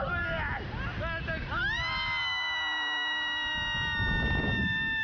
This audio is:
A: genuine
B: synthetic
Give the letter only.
A